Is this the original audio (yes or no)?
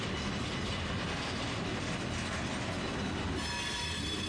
yes